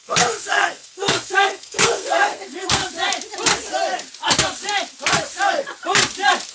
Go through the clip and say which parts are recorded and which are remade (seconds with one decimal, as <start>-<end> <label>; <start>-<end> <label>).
0.0-2.8 remade; 2.8-6.5 recorded